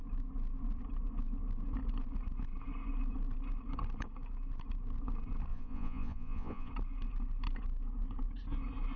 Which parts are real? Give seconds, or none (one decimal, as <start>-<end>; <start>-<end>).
0.0-5.5; 6.7-9.0